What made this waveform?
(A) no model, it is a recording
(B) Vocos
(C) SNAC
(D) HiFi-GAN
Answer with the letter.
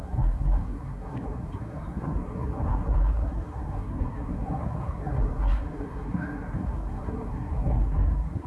C